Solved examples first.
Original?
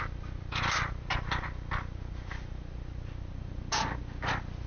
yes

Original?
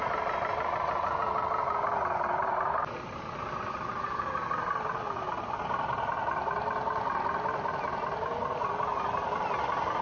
yes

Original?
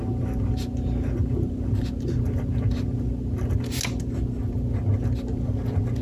yes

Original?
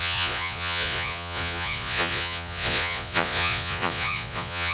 no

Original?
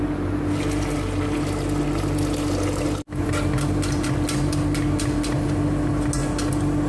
yes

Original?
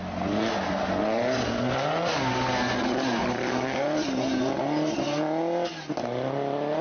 yes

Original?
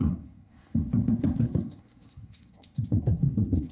no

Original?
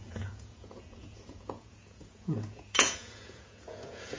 no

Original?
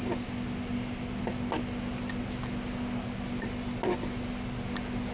yes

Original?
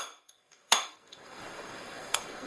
no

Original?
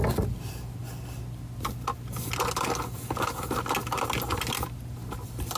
yes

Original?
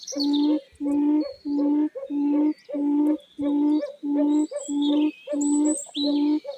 yes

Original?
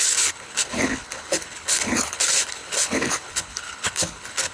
no